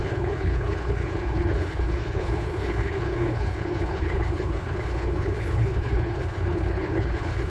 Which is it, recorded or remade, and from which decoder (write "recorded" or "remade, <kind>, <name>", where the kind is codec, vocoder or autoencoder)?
remade, codec, HILCodec